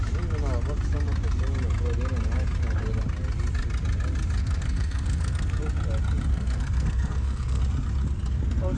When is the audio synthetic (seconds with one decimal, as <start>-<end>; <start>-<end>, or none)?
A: 4.4-5.6; 6.3-7.6